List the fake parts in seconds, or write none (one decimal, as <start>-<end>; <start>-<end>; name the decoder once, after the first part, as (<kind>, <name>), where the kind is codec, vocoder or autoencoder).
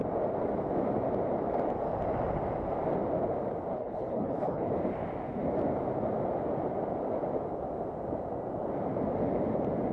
3.7-4.7 (codec, HILCodec)